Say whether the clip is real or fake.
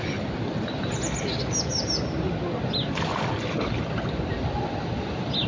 real